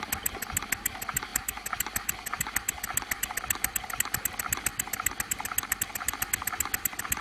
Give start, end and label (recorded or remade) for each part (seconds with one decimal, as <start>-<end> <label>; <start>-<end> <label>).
0.0-7.2 recorded